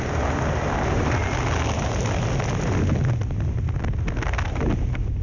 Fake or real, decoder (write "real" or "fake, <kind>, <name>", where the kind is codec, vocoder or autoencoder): real